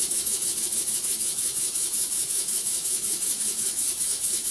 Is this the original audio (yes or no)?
no